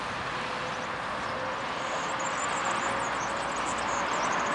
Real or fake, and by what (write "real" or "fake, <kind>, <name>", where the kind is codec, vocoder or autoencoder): real